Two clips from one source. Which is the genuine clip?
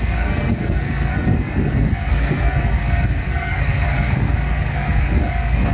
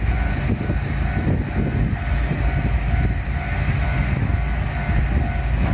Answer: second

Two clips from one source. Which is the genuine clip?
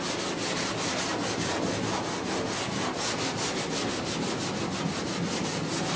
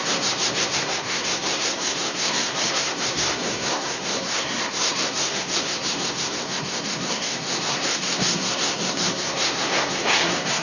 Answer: first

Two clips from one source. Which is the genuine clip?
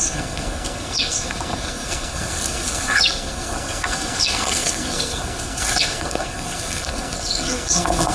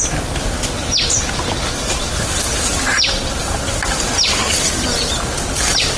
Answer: second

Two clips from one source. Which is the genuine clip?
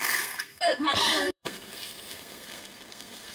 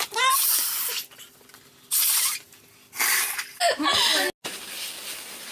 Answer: second